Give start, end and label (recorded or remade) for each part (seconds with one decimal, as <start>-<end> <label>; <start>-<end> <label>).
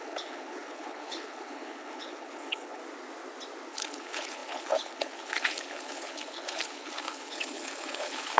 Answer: 0.0-2.8 remade; 2.8-3.7 recorded; 3.7-8.4 remade